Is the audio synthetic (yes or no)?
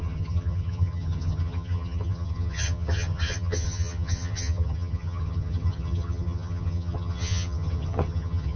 yes